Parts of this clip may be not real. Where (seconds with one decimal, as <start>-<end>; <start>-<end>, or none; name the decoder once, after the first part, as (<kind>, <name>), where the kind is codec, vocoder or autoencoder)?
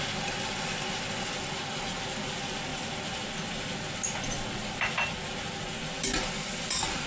none